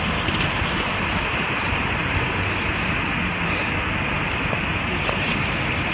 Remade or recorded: recorded